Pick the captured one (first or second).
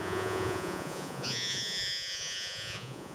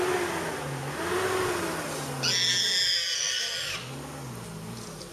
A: second